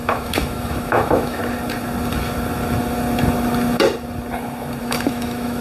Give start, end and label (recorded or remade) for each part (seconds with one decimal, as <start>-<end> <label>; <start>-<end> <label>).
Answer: 0.0-1.4 remade; 1.4-4.8 recorded; 4.8-5.6 remade